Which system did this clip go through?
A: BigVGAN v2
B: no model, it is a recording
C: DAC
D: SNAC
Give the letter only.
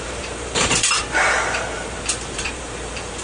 A